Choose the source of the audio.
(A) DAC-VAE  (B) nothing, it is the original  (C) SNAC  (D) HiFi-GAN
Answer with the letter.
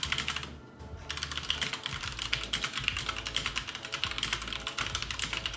B